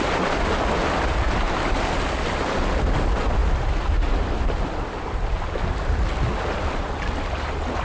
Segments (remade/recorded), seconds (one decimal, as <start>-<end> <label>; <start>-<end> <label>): 0.0-7.8 recorded